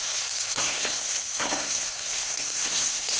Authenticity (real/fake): fake